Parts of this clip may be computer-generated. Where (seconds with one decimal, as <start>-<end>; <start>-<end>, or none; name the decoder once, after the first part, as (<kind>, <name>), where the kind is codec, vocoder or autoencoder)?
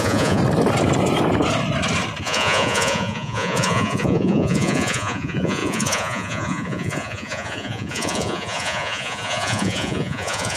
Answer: 0.0-0.4 (vocoder, Vocos); 2.2-10.6